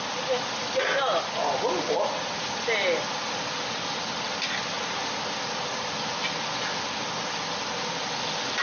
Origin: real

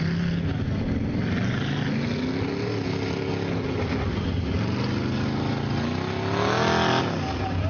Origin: real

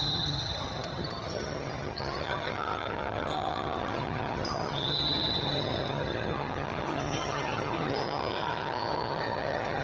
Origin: fake